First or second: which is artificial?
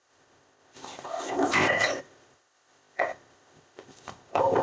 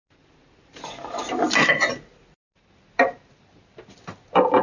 first